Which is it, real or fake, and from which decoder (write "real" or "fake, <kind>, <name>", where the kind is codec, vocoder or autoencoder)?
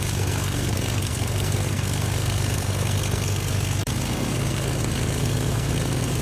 fake, codec, SNAC